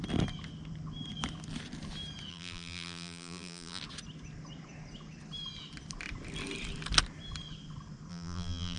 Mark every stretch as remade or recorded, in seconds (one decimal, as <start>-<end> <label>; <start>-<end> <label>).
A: 0.0-2.3 recorded; 2.3-3.8 remade; 3.8-8.1 recorded; 8.1-8.8 remade

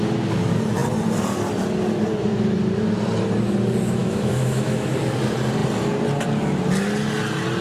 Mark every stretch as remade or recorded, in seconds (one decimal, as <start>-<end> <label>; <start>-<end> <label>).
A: 0.0-4.0 recorded; 4.0-4.9 remade; 4.9-7.6 recorded